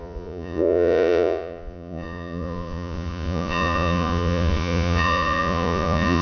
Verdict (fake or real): fake